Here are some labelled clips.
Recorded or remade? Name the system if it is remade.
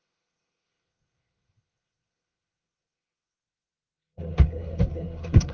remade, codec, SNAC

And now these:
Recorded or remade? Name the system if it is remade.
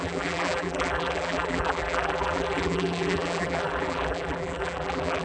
remade, vocoder, BigVGAN v2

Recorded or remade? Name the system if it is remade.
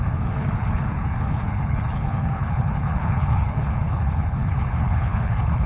remade, codec, HILCodec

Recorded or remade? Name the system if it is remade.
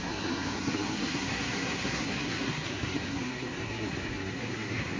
remade, codec, SNAC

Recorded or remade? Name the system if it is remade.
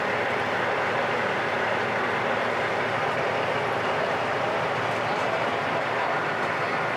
recorded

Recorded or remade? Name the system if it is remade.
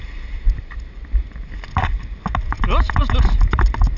recorded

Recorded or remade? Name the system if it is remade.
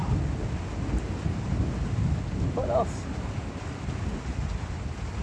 recorded